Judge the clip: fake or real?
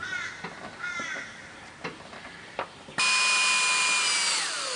real